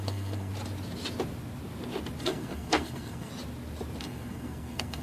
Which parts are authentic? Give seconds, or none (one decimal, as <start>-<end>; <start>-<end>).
0.5-2.2; 3.3-4.0